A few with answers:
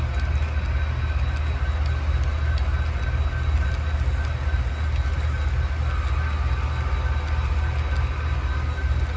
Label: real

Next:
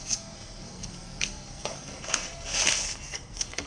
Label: fake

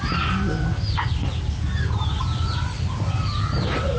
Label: real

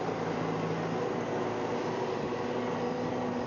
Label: real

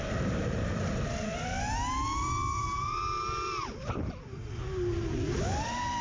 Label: real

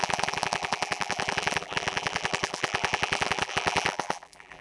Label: fake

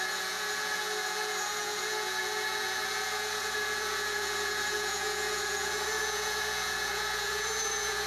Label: fake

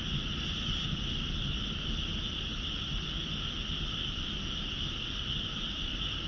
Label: real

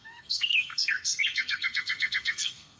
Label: fake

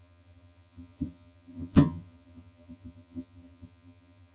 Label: fake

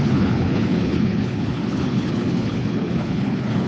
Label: fake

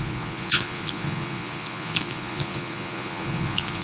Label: fake